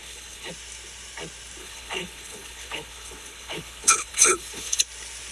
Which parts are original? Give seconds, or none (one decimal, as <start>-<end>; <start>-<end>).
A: 0.5-1.6; 4.8-5.3